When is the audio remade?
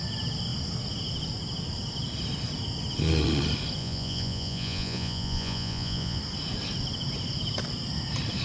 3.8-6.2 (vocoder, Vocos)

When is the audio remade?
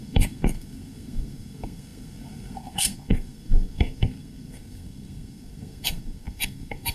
0.0-6.9 (codec, SNAC)